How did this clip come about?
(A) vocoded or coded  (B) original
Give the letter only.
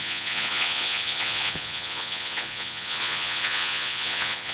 A